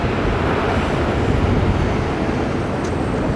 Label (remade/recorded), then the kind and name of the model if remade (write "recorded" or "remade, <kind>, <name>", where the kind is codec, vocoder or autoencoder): recorded